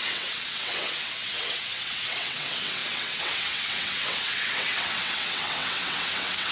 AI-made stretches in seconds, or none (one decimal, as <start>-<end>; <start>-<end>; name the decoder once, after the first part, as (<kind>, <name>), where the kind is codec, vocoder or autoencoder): 0.0-6.5 (vocoder, WaveNeXt)